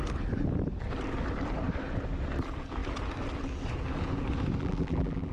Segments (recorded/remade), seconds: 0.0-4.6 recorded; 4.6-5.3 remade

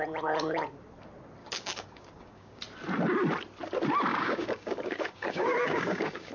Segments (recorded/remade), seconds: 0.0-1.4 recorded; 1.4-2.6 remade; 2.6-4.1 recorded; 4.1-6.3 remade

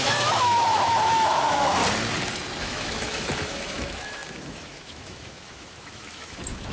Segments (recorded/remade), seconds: 0.0-1.8 remade; 1.8-2.6 recorded; 2.6-6.7 remade